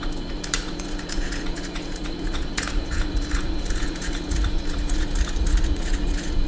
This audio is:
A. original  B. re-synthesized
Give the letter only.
B